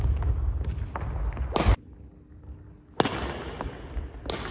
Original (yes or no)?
yes